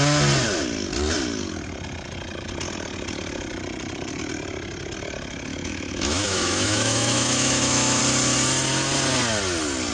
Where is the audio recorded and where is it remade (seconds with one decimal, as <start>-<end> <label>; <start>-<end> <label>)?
0.0-5.5 recorded; 5.5-8.0 remade; 8.0-9.9 recorded